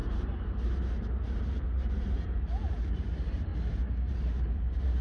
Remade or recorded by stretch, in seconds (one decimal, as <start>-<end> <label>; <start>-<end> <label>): 0.0-3.5 remade; 3.5-4.1 recorded; 4.1-5.0 remade